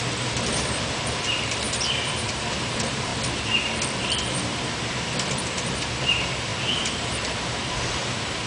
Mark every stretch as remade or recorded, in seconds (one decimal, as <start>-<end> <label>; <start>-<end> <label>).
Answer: 0.0-3.1 remade; 3.1-4.3 recorded; 4.3-8.5 remade